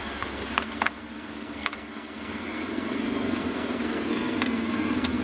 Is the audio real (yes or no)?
no